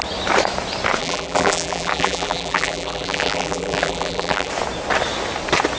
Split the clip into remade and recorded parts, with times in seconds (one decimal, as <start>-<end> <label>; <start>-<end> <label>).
0.0-1.0 recorded; 1.0-4.5 remade; 4.5-5.8 recorded